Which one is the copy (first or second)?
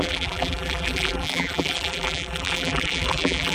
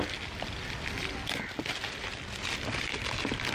first